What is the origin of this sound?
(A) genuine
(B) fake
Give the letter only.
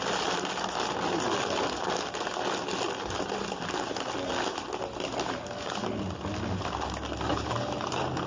A